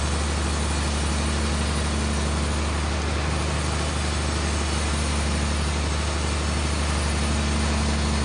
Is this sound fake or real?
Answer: real